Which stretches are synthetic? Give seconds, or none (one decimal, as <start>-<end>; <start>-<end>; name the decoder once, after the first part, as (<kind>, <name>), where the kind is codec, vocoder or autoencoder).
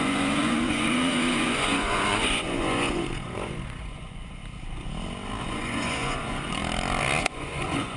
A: 0.0-4.4 (vocoder, Vocos); 5.4-6.6; 7.2-8.0